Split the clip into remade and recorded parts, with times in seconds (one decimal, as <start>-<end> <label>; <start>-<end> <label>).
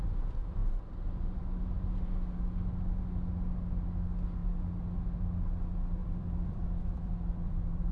0.0-6.0 recorded; 6.0-7.9 remade